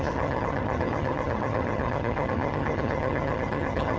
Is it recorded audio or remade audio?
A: remade